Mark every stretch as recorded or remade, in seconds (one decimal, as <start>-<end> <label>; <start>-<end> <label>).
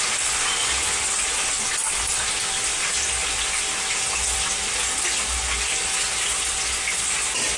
0.0-7.6 recorded